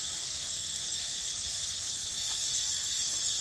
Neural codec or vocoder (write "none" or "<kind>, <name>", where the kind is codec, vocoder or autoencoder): codec, SNAC